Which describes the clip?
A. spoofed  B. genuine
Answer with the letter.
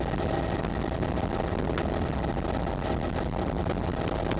B